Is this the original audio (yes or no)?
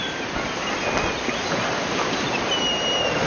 yes